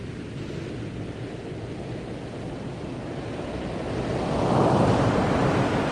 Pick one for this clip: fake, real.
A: real